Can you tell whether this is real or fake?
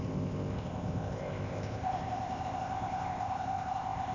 fake